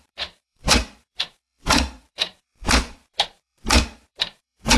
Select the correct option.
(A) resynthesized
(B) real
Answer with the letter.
A